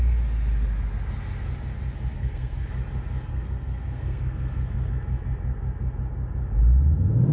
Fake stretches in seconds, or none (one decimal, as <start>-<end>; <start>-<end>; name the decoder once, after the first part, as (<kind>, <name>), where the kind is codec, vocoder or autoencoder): 2.1-2.7 (codec, SNAC); 3.3-4.9